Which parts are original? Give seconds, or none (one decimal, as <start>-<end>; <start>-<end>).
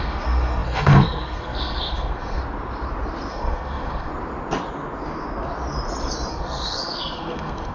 2.4-3.3; 4.1-6.3